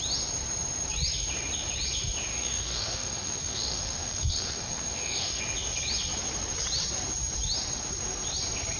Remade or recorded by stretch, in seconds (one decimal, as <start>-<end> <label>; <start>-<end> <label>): 0.0-2.3 recorded; 2.3-5.4 remade; 5.4-8.8 recorded